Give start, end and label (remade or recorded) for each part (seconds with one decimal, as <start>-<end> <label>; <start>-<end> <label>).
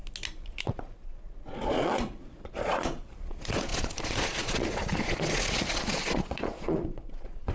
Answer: 0.0-0.6 recorded; 0.6-7.5 remade